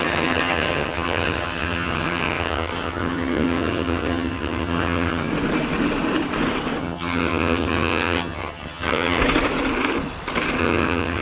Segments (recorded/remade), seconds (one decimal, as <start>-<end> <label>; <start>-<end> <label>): 0.0-5.3 remade; 5.3-6.8 recorded; 6.8-9.2 remade; 9.2-10.6 recorded; 10.6-11.2 remade